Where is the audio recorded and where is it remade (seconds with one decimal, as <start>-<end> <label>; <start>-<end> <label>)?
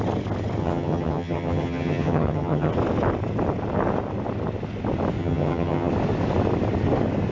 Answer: 0.0-0.6 recorded; 0.6-2.7 remade; 2.7-5.2 recorded; 5.2-5.9 remade; 5.9-7.3 recorded